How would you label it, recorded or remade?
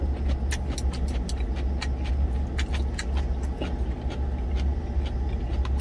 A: recorded